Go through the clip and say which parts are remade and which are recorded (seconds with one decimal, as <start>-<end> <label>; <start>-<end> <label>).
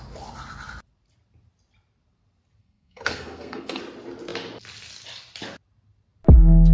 0.0-2.6 recorded; 2.6-3.8 remade; 3.8-6.7 recorded